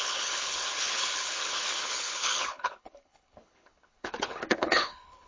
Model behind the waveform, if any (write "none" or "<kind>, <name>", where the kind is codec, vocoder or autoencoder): codec, HILCodec